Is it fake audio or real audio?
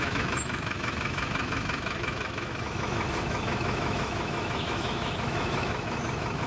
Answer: fake